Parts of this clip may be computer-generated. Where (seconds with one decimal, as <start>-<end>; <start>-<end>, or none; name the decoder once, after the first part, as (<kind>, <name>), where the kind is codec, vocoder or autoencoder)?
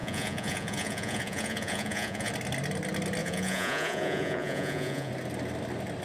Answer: 0.0-2.3 (vocoder, Vocos); 3.2-5.1